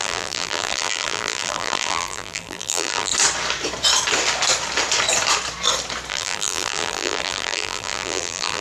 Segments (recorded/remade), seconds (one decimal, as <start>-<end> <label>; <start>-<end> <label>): 0.0-3.1 remade; 3.1-6.1 recorded; 6.1-8.6 remade